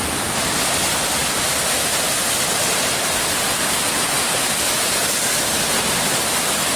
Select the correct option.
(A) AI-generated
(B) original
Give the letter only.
B